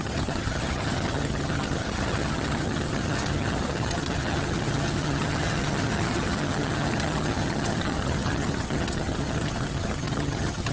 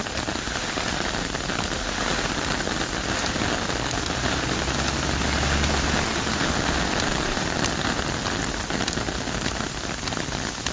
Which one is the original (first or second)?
second